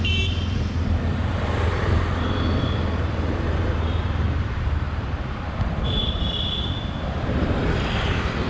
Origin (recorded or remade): remade